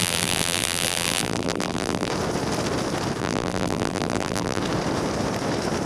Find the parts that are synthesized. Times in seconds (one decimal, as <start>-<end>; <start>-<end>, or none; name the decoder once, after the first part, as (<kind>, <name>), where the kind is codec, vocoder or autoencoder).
0.0-2.1 (vocoder, BigVGAN v2); 3.2-4.6